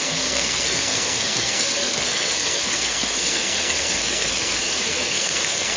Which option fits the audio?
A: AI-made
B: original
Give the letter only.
A